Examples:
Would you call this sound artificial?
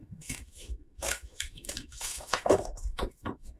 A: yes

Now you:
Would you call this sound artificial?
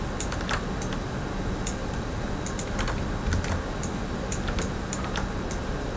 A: yes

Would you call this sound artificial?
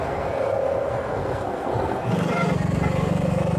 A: yes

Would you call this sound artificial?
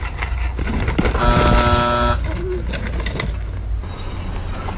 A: no